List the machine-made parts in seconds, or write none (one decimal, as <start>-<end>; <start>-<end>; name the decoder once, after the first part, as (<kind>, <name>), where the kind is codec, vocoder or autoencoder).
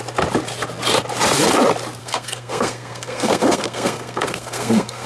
2.0-5.1 (codec, SNAC)